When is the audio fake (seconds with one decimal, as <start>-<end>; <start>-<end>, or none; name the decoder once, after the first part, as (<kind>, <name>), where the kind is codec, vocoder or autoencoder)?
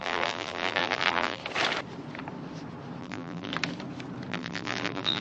0.0-1.4 (vocoder, BigVGAN v2); 3.0-3.5; 4.3-5.2